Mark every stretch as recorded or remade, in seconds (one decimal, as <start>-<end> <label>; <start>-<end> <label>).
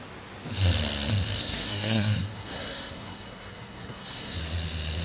0.0-1.4 recorded; 1.4-4.4 remade; 4.4-5.0 recorded